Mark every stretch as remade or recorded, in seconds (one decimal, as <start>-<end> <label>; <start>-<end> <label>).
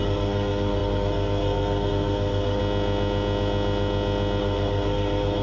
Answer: 0.0-2.6 remade; 2.6-4.4 recorded; 4.4-5.4 remade